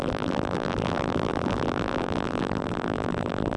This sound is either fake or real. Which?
fake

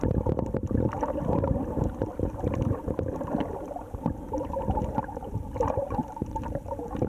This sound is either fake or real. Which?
fake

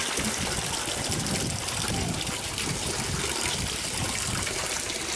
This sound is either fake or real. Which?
real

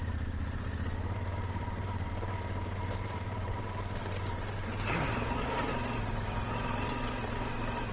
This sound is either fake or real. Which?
fake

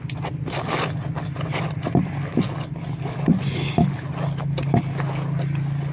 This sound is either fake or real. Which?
real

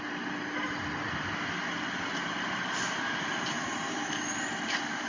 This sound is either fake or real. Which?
real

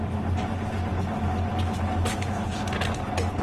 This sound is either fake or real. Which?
real